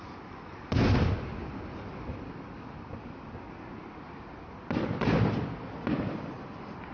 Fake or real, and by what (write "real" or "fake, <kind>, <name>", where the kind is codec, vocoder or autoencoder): real